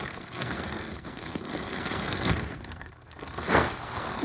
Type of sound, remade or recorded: remade